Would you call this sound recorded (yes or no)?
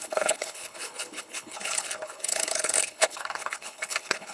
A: no